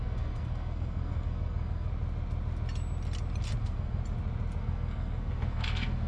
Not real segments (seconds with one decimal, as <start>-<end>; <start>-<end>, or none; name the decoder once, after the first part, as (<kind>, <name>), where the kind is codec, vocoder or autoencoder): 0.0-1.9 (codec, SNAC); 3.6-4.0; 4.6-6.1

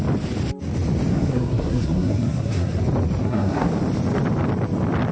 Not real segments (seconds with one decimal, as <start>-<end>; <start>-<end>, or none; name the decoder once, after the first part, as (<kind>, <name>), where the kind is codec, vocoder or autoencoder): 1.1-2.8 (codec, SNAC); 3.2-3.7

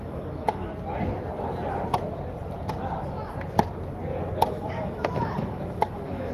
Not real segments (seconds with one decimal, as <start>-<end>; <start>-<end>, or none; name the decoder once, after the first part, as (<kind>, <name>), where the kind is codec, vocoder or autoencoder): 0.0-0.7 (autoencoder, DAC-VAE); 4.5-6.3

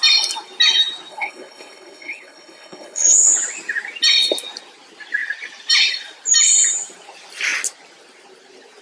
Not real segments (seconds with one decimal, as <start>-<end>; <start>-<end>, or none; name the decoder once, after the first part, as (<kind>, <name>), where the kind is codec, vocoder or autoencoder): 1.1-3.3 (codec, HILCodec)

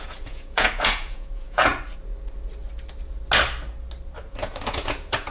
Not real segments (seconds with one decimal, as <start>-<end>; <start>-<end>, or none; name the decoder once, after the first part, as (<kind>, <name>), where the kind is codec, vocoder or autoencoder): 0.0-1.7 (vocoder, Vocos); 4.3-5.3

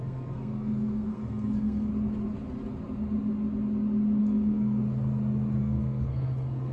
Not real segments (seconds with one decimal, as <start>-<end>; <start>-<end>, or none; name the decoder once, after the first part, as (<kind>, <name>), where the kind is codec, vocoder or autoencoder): 0.0-1.9 (codec, SNAC); 4.2-4.8; 5.6-6.7